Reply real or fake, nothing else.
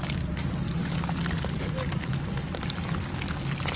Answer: real